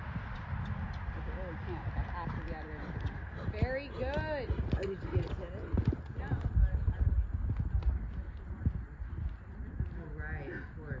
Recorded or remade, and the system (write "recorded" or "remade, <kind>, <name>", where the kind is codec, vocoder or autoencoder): recorded